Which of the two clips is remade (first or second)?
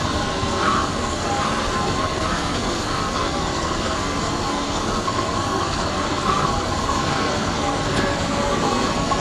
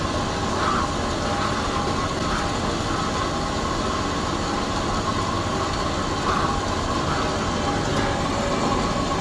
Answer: first